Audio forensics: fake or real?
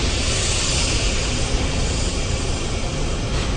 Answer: real